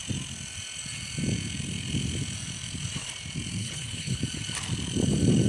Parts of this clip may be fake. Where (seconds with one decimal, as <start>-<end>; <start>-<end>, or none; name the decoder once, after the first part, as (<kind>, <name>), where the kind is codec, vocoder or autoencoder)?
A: 3.6-4.2 (codec, HILCodec)